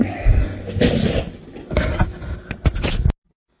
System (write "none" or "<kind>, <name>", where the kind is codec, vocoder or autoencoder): none